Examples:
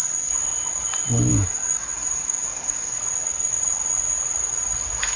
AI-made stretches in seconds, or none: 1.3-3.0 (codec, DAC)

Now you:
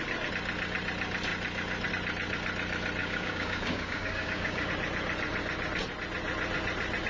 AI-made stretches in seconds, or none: 3.0-4.7 (codec, DAC)

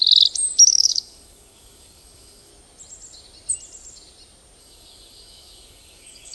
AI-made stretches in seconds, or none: 0.8-2.5 (codec, DAC); 4.6-6.3

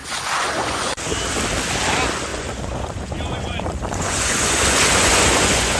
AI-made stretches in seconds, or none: 0.0-1.0 (vocoder, Vocos); 2.3-5.8

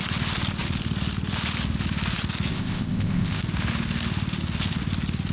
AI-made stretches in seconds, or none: 2.5-3.4 (codec, ZipCodec)

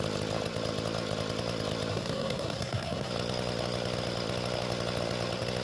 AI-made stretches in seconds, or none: 1.9-3.1 (codec, SNAC)

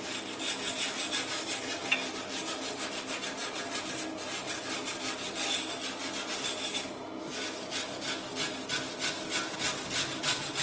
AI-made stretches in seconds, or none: none

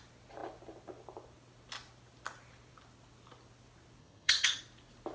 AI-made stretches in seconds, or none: 4.0-4.6 (vocoder, HiFi-GAN)